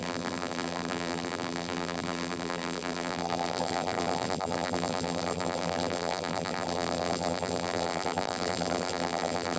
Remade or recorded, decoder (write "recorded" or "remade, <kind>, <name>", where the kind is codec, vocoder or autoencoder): remade, vocoder, BigVGAN v2